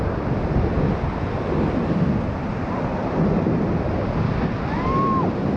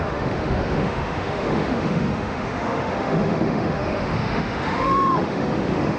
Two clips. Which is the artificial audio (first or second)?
second